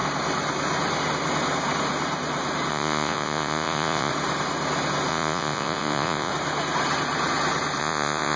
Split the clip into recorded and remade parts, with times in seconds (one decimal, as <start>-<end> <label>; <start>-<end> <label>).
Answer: 0.0-2.7 recorded; 2.7-4.1 remade; 4.1-5.1 recorded; 5.1-6.3 remade; 6.3-7.8 recorded; 7.8-8.4 remade